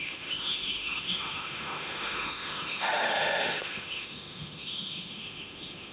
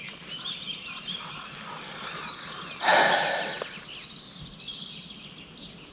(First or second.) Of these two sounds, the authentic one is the second